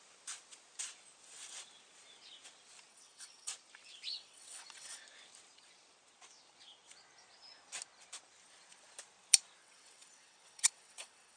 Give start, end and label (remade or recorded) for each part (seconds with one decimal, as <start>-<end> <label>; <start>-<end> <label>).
0.0-2.9 recorded; 2.9-3.5 remade; 3.5-4.1 recorded; 4.1-5.0 remade; 5.0-9.6 recorded; 9.6-11.4 remade